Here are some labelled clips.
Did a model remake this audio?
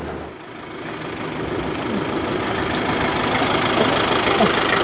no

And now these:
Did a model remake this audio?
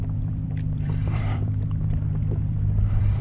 yes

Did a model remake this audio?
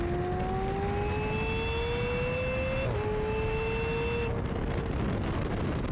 no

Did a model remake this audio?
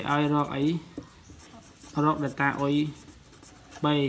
no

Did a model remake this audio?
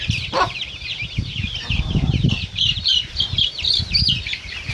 yes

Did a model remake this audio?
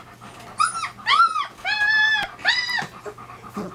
no